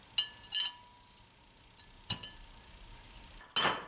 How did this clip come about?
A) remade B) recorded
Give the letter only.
B